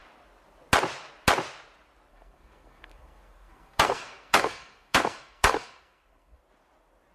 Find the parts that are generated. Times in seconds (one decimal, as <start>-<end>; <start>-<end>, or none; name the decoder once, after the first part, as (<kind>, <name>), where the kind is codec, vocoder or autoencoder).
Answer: 2.1-6.4 (codec, SNAC)